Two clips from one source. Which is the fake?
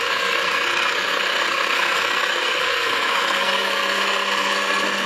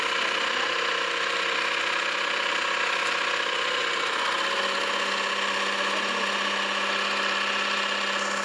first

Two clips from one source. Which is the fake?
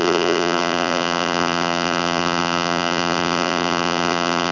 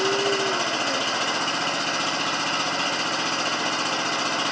first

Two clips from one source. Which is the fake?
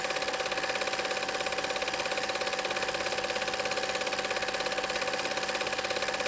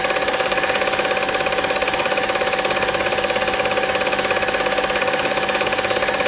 second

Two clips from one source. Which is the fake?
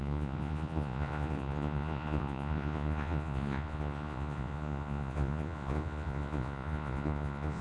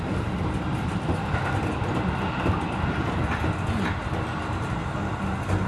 first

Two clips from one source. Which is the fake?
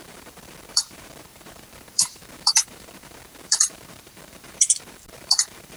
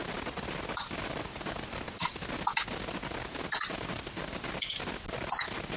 first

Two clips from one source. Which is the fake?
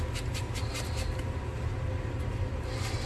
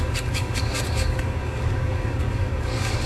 second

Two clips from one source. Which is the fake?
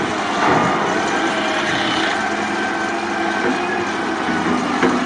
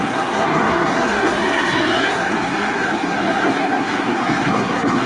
second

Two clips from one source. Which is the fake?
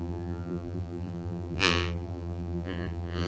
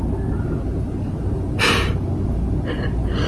first